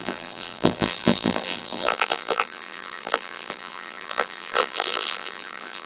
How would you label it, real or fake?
fake